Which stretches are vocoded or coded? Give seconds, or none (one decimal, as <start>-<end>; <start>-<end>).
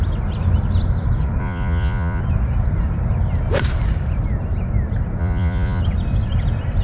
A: 1.4-2.2; 5.2-5.8